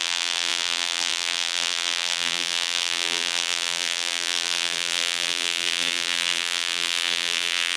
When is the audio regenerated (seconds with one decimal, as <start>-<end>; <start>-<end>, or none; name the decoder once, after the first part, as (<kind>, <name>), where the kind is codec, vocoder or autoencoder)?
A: 0.0-7.8 (vocoder, BigVGAN v2)